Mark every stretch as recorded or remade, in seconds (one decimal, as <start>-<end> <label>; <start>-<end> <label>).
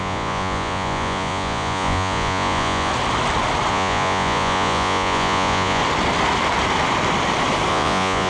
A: 0.0-2.9 remade; 2.9-3.7 recorded; 3.7-5.8 remade; 5.8-7.7 recorded; 7.7-8.3 remade